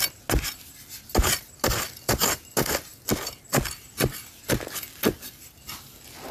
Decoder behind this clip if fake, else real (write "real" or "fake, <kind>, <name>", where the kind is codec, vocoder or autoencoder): real